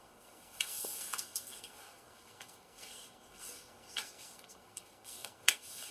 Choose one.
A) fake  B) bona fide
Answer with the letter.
A